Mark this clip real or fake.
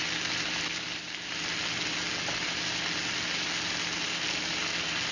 real